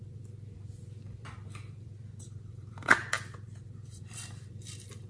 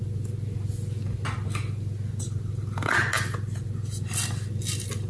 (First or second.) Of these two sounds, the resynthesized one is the first